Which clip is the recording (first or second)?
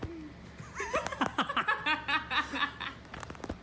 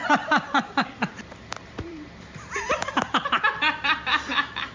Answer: first